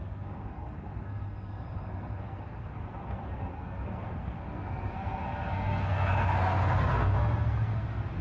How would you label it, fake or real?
fake